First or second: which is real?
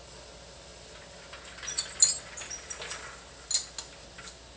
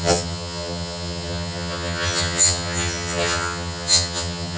first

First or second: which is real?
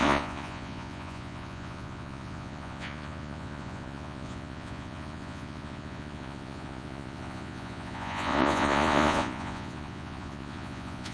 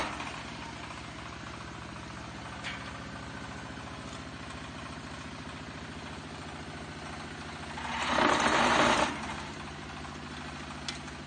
second